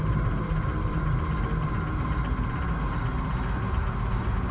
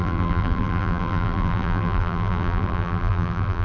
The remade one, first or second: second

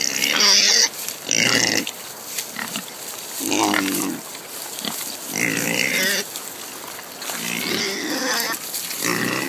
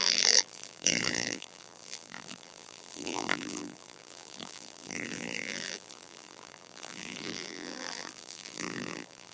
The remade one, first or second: second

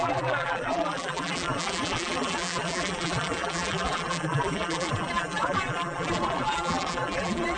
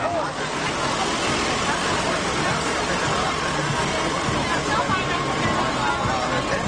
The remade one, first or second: first